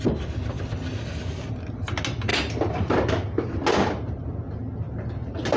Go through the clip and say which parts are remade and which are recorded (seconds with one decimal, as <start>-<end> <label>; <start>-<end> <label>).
0.0-5.6 recorded